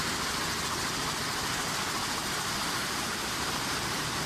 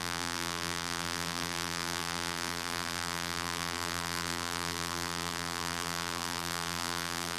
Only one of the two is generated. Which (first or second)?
second